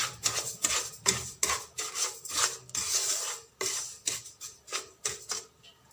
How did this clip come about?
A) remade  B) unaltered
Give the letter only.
B